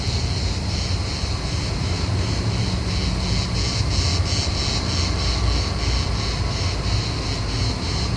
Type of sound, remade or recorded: recorded